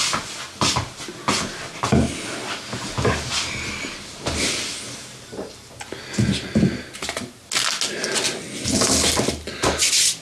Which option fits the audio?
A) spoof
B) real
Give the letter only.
B